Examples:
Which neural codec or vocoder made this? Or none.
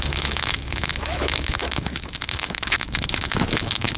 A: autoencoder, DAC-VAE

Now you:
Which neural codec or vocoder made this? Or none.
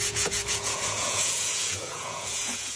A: vocoder, Vocos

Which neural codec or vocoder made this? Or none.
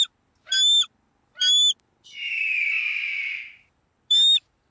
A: none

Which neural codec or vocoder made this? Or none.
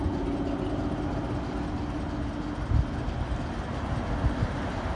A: none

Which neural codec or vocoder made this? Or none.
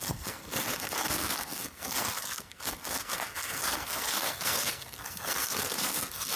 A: codec, SNAC